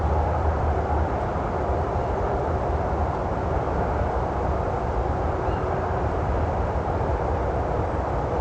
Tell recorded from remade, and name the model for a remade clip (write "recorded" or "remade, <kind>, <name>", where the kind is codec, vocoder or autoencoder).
remade, vocoder, BigVGAN v2